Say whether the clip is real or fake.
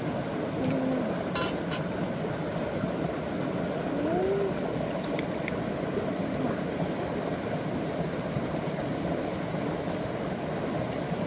real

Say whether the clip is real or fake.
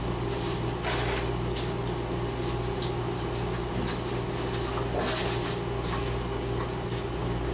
real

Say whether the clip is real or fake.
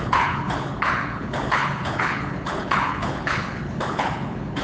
fake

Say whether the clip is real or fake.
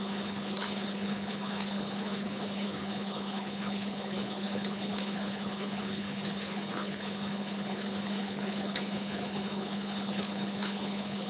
fake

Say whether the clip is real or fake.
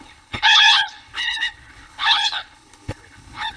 fake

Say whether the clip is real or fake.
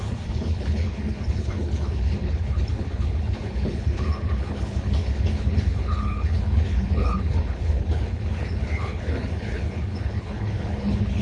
fake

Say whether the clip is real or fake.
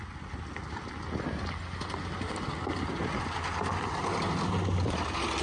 real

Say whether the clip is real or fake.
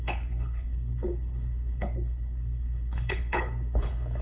fake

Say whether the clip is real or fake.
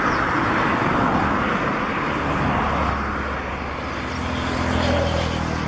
real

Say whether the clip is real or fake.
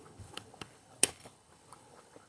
fake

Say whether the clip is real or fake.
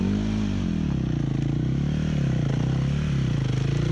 real